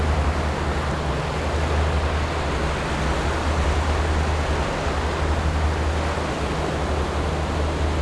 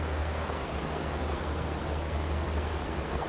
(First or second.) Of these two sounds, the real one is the first